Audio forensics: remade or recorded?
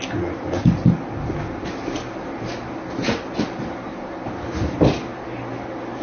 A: recorded